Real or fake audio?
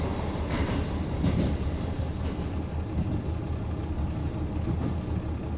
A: real